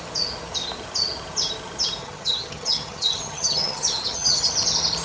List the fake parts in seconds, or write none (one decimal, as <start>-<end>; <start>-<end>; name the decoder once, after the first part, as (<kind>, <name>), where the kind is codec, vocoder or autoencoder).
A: 2.0-4.5 (vocoder, HiFi-GAN)